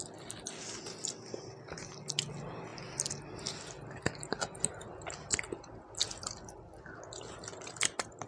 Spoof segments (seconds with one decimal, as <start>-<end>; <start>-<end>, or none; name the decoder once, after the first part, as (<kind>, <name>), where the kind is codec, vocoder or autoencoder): none